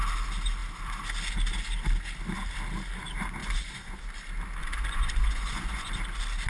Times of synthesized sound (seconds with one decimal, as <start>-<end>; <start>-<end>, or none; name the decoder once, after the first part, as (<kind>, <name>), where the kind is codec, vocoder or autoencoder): 3.4-4.0 (vocoder, Vocos); 4.6-5.9